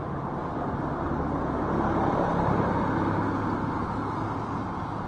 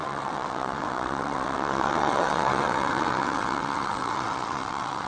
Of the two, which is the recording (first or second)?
first